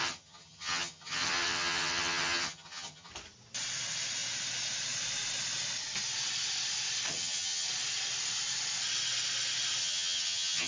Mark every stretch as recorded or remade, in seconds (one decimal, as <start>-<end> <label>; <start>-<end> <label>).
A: 0.0-3.1 remade; 3.1-7.1 recorded; 7.1-7.7 remade; 7.7-9.8 recorded; 9.8-10.7 remade